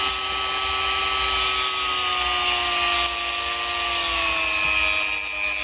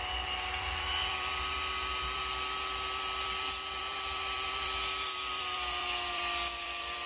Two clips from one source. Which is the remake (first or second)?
second